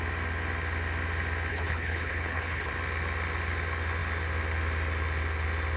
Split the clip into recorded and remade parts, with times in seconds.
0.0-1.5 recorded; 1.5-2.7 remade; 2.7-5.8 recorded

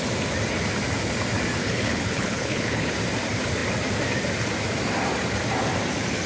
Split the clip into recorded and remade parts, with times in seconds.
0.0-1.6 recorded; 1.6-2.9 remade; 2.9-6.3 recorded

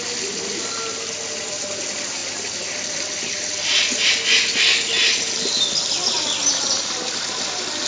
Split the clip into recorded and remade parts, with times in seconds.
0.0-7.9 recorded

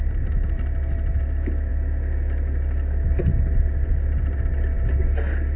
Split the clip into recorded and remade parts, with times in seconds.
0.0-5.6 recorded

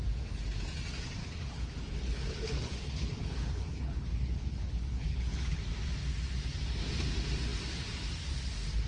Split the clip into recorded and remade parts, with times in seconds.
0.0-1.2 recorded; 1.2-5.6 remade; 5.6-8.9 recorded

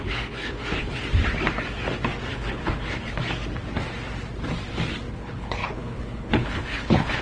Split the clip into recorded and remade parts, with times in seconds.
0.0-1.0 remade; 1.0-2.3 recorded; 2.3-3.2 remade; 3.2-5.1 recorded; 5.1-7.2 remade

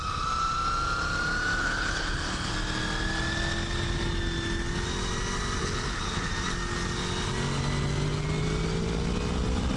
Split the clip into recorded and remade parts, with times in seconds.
0.0-1.6 recorded; 1.6-2.5 remade; 2.5-5.6 recorded; 5.6-6.3 remade; 6.3-9.8 recorded